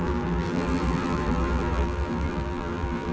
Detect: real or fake fake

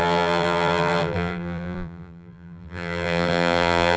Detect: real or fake fake